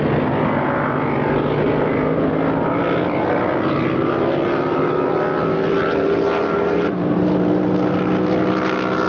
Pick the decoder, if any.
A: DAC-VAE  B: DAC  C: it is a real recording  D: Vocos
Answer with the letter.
C